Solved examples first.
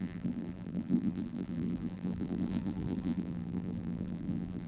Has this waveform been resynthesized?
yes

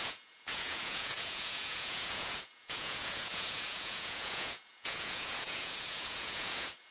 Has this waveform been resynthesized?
yes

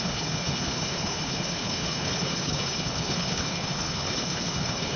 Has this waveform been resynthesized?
yes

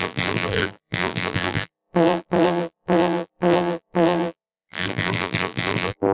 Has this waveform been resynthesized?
yes